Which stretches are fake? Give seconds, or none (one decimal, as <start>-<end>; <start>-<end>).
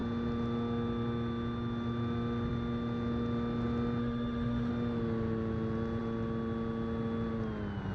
4.0-4.7